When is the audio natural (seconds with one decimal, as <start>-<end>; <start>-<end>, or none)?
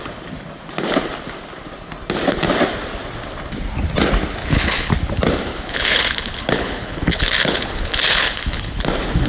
0.0-4.4; 4.9-5.5; 8.8-9.3